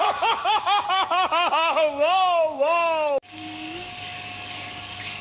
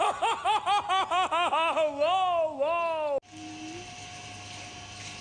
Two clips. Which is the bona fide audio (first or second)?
second